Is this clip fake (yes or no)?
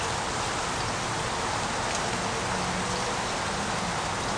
no